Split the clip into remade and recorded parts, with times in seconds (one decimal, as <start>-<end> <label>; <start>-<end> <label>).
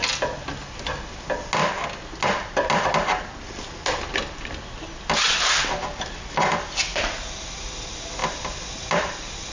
0.0-8.2 recorded; 8.2-9.5 remade